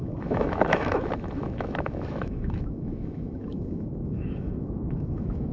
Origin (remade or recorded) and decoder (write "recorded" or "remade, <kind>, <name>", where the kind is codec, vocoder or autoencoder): remade, autoencoder, DAC-VAE